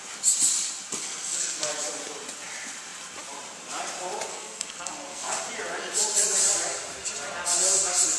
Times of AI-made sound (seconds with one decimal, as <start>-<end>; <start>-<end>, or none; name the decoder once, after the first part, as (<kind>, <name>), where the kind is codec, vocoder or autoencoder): 1.0-1.7 (codec, SNAC); 4.3-5.4